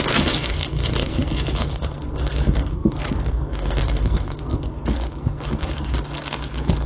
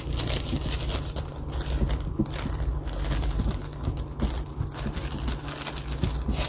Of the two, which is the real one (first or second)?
second